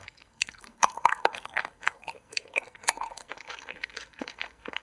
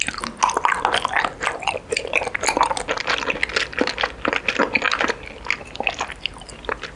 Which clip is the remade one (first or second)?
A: first